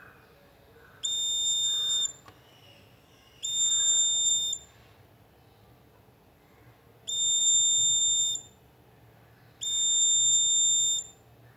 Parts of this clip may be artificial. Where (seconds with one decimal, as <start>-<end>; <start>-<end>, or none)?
none